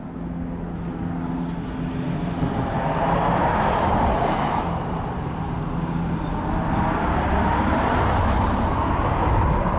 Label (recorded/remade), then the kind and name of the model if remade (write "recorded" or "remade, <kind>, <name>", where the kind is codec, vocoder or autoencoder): recorded